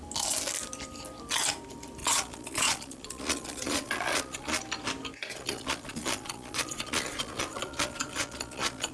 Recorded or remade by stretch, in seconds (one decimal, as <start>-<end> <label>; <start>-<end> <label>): 0.0-2.0 recorded; 2.0-4.6 remade; 4.6-5.2 recorded; 5.2-8.9 remade